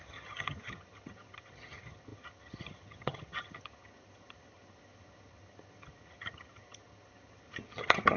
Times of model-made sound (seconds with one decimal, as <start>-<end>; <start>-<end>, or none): 0.0-8.2